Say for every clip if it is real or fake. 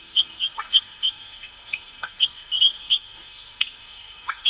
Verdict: fake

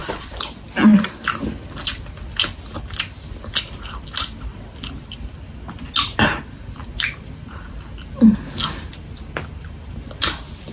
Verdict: real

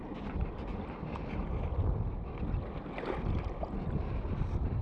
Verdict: real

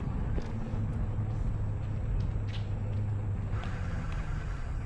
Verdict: real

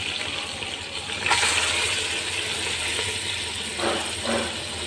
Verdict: real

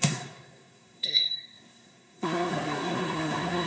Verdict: fake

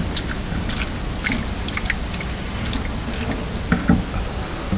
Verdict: real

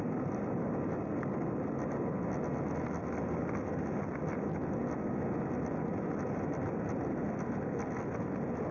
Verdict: real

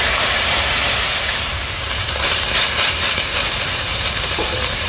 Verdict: fake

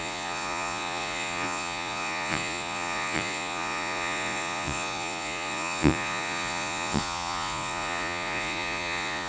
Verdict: fake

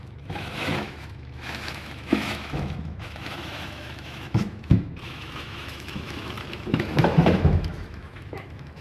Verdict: fake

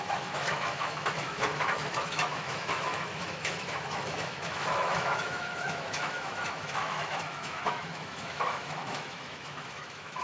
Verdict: fake